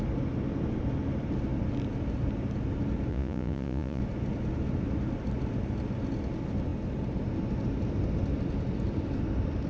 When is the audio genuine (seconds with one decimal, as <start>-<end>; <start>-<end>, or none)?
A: 0.0-3.1; 4.0-9.7